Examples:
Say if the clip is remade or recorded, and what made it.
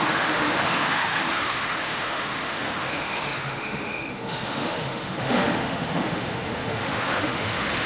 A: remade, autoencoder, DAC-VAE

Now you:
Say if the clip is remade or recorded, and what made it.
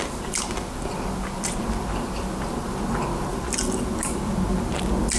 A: recorded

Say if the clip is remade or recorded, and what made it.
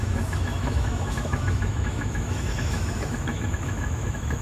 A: remade, autoencoder, DAC-VAE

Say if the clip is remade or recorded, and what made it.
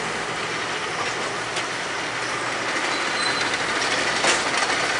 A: recorded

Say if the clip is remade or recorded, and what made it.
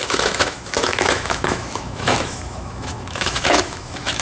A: remade, autoencoder, DAC-VAE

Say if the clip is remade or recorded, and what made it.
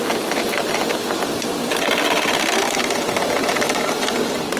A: recorded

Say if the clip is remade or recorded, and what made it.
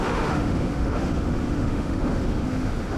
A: remade, autoencoder, DAC-VAE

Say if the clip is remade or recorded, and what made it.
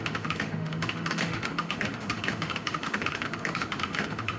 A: remade, autoencoder, DAC-VAE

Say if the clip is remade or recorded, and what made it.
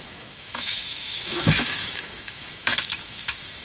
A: remade, autoencoder, DAC-VAE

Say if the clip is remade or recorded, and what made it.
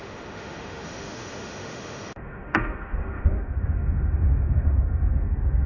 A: remade, autoencoder, DAC-VAE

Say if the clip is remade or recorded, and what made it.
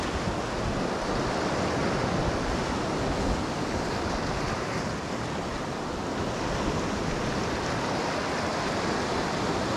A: recorded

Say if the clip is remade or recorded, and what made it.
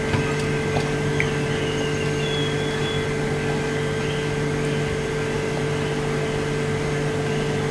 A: recorded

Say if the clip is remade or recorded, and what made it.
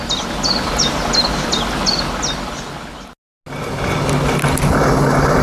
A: recorded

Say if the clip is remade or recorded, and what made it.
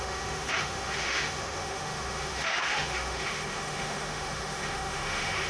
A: remade, autoencoder, DAC-VAE